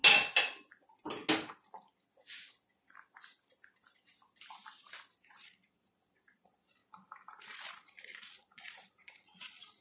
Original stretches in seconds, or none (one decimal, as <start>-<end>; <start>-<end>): 0.0-5.2; 6.8-7.7